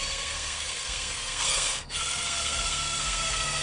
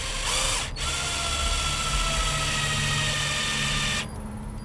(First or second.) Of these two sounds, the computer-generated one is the first